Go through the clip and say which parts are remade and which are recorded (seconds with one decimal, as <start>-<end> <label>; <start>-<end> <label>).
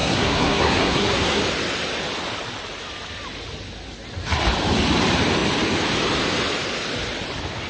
0.0-1.4 remade; 1.4-7.7 recorded